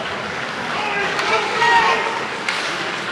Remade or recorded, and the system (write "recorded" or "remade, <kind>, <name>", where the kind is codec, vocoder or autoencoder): remade, codec, DAC